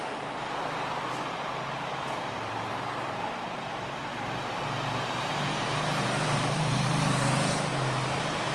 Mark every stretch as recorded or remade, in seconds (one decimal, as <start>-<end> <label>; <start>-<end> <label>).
0.0-0.9 recorded; 0.9-8.5 remade